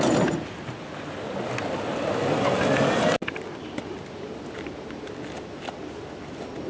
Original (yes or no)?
yes